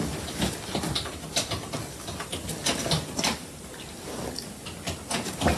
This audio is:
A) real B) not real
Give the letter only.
A